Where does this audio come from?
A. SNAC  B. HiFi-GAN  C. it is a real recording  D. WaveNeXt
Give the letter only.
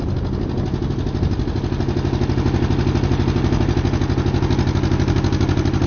C